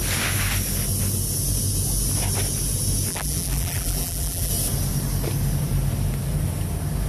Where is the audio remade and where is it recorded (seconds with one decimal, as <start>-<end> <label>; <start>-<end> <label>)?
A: 0.0-3.1 recorded; 3.1-4.5 remade; 4.5-7.1 recorded